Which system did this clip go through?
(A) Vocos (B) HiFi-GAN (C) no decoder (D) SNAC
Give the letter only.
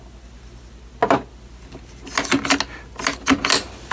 C